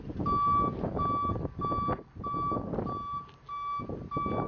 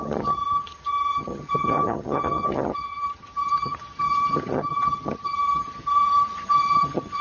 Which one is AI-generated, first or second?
second